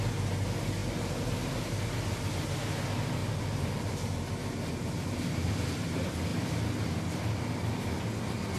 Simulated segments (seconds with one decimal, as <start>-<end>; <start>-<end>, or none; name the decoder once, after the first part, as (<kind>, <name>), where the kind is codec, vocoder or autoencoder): none